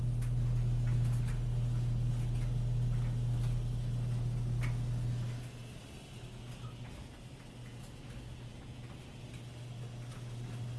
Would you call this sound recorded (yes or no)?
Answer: yes